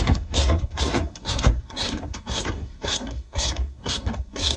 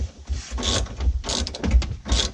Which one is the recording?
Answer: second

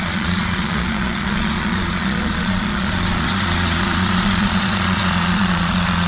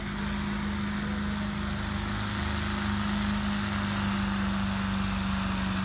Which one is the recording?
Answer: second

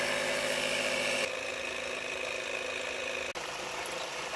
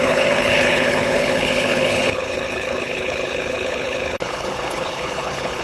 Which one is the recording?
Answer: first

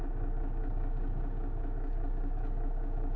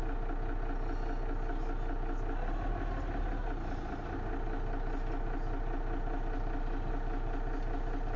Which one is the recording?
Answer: second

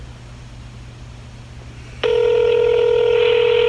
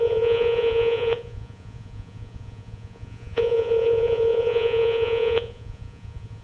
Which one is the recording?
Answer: first